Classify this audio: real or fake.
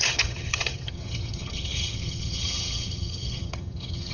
fake